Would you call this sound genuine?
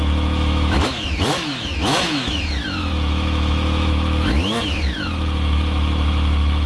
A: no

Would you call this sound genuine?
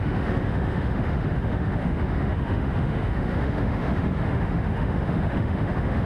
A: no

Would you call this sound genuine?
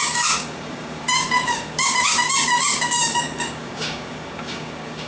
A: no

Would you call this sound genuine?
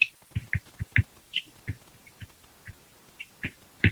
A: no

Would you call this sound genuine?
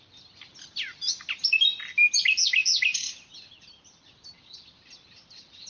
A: yes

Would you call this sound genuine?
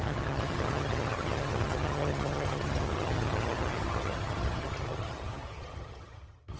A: no